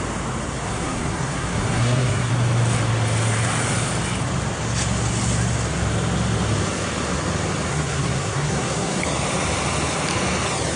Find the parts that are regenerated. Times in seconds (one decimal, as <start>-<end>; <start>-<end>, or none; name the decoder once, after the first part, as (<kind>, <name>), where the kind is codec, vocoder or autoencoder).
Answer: 0.7-2.3 (codec, SNAC); 7.7-9.0

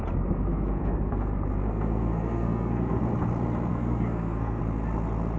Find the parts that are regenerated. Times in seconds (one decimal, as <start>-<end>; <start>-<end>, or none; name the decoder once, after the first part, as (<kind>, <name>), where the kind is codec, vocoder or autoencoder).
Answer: 0.5-1.2 (codec, SNAC); 1.6-3.0; 3.7-4.6